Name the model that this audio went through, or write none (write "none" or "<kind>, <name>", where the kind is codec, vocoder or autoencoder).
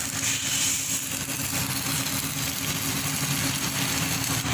none